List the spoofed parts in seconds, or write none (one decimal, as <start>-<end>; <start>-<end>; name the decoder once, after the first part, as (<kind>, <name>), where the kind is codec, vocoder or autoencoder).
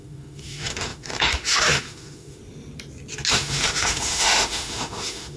0.0-2.4 (autoencoder, DAC-VAE); 3.3-5.4